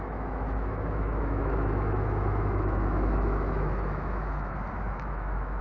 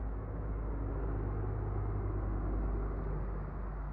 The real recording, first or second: second